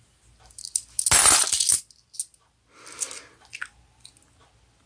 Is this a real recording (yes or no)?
yes